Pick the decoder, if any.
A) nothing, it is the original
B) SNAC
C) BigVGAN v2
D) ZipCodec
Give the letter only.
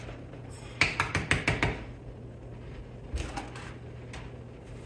A